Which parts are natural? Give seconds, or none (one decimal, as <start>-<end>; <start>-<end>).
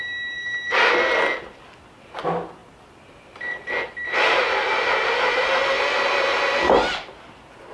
0.0-7.7